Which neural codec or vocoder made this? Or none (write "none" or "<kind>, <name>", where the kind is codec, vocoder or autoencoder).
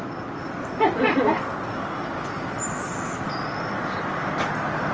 none